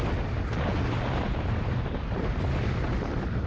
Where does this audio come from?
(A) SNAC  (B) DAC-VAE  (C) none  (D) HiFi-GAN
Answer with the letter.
C